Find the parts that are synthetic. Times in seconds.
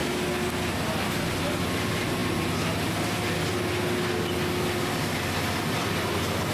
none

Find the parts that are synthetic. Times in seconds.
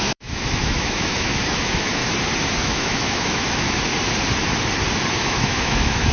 0.0-2.0; 2.6-3.9; 5.1-6.1